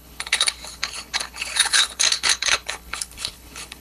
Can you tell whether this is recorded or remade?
remade